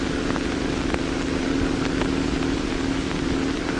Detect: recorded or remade recorded